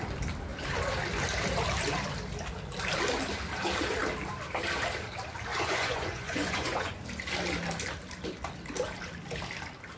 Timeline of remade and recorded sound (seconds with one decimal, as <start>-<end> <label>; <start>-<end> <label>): 0.0-5.5 recorded; 5.5-7.0 remade; 7.0-10.0 recorded